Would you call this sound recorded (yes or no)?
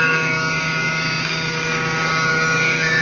no